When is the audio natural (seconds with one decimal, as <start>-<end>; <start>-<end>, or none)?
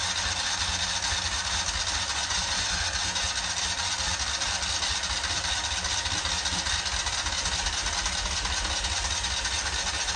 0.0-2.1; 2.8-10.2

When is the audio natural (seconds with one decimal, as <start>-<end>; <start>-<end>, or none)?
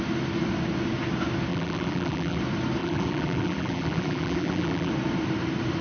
0.0-1.5; 2.4-2.8; 4.9-5.8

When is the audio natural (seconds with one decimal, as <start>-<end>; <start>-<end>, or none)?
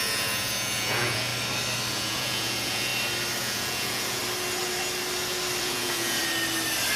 1.3-1.9; 2.9-3.4; 4.2-5.6; 6.2-7.0